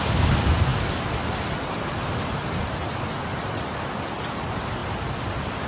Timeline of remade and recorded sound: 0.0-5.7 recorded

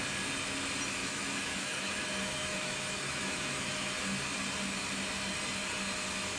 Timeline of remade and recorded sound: 0.0-1.0 recorded; 1.0-3.9 remade; 3.9-6.4 recorded